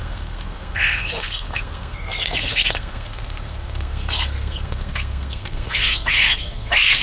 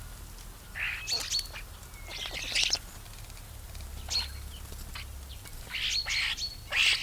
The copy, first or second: first